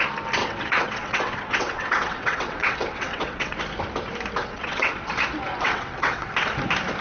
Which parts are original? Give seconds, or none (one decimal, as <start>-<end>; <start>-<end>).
0.0-0.4; 3.6-4.4; 5.1-5.5; 6.3-7.0